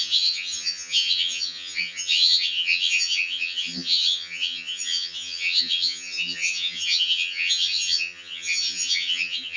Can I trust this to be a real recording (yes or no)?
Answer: no